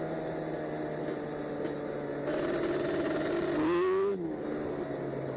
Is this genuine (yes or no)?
yes